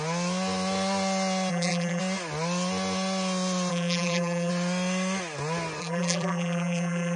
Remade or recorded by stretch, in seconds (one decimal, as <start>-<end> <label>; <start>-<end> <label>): 0.0-1.5 recorded; 1.5-2.0 remade; 2.0-3.7 recorded; 3.7-4.5 remade; 4.5-5.8 recorded; 5.8-7.2 remade